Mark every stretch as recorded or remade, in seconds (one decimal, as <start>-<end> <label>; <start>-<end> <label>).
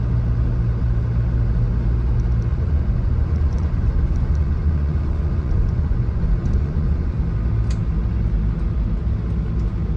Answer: 0.0-2.5 recorded; 2.5-7.2 remade; 7.2-10.0 recorded